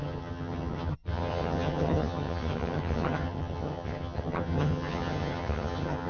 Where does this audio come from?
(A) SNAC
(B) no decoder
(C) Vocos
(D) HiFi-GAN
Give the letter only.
D